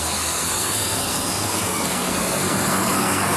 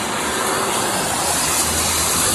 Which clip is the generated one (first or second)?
first